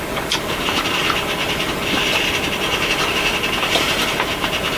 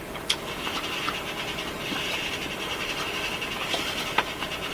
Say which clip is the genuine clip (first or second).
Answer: first